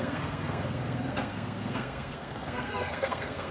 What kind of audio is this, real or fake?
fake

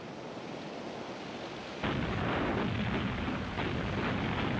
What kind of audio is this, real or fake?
real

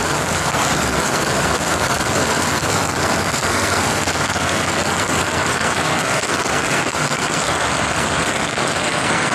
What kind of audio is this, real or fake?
fake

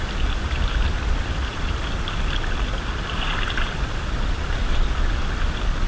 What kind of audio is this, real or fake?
real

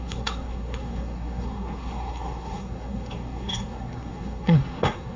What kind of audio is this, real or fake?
fake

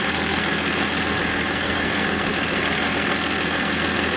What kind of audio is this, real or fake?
fake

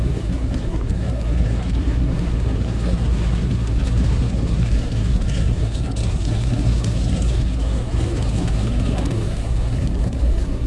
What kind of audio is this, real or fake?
fake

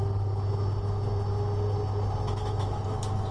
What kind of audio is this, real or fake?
real